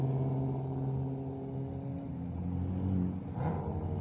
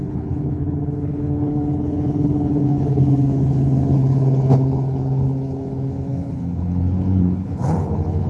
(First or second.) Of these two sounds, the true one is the first